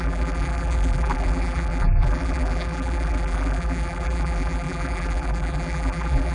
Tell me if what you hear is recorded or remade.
remade